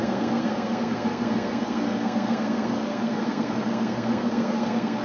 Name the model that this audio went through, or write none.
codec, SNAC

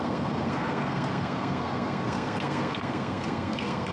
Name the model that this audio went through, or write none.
codec, SNAC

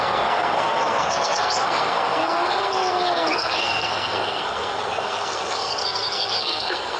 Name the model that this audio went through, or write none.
codec, SNAC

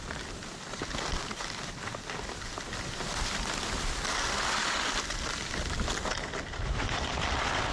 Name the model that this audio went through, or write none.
none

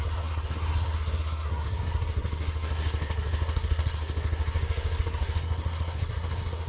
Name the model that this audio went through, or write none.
codec, SNAC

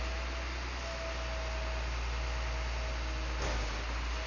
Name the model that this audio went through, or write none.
none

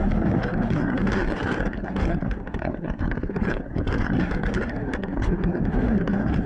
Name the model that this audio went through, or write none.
codec, SNAC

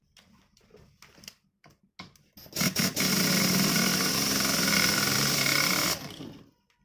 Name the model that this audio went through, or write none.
none